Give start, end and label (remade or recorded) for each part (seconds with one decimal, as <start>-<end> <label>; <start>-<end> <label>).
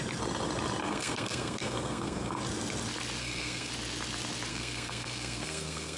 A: 0.0-0.8 recorded; 0.8-2.4 remade; 2.4-3.2 recorded; 3.2-3.7 remade; 3.7-4.5 recorded; 4.5-6.0 remade